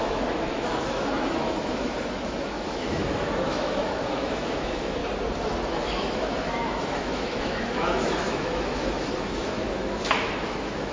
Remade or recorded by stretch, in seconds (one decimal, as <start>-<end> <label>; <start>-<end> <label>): 0.0-5.0 remade; 5.0-5.7 recorded; 5.7-10.9 remade